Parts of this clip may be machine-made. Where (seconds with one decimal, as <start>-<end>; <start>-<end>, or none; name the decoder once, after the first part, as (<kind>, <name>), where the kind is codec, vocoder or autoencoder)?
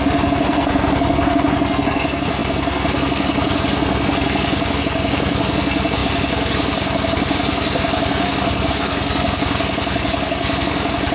0.0-11.1 (codec, SNAC)